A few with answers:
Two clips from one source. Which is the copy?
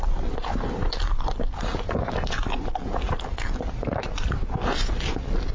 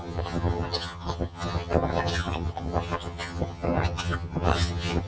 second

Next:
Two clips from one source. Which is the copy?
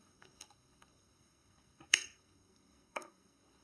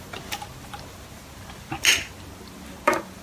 first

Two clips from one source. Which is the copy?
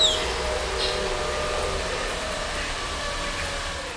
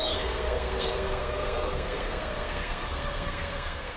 second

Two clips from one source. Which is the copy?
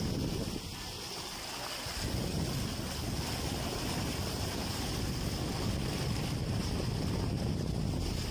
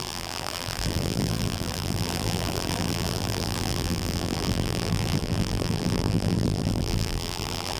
second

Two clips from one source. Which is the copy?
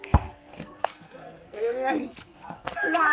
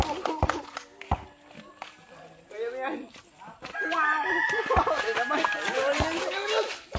first